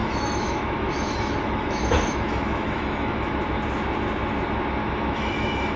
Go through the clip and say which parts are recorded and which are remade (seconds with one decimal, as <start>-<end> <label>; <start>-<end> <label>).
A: 0.0-3.4 remade; 3.4-4.8 recorded; 4.8-5.8 remade

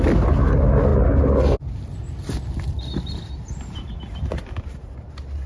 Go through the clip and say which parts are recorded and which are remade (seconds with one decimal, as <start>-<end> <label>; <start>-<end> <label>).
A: 0.0-5.5 recorded

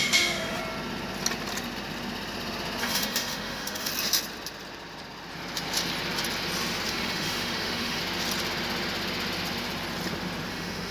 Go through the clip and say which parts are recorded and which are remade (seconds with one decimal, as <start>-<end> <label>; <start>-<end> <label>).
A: 0.0-0.6 remade; 0.6-2.8 recorded; 2.8-3.9 remade; 3.9-6.9 recorded; 6.9-8.0 remade; 8.0-10.5 recorded; 10.5-10.9 remade

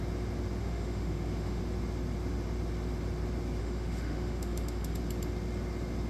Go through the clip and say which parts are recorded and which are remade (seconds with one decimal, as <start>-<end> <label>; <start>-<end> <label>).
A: 0.0-0.6 recorded; 0.6-1.6 remade; 1.6-3.6 recorded; 3.6-5.0 remade; 5.0-6.1 recorded

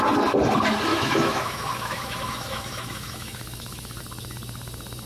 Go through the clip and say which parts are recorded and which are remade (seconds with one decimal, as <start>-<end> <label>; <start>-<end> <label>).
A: 0.0-0.9 recorded; 0.9-4.0 remade; 4.0-5.1 recorded

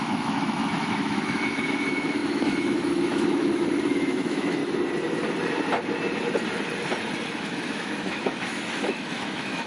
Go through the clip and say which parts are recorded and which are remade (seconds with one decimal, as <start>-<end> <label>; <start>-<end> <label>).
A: 0.0-4.6 remade; 4.6-7.3 recorded; 7.3-9.7 remade

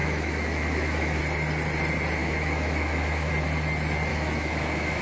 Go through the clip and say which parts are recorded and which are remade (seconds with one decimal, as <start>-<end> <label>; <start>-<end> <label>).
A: 0.0-1.2 remade; 1.2-2.2 recorded; 2.2-3.3 remade; 3.3-4.1 recorded; 4.1-5.0 remade

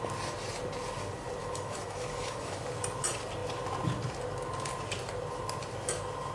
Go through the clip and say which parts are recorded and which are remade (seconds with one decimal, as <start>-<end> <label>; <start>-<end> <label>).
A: 0.0-1.4 recorded; 1.4-2.6 remade; 2.6-6.3 recorded